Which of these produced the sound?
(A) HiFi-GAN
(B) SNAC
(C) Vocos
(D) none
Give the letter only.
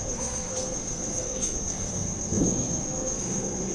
B